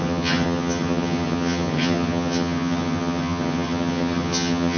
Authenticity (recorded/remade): remade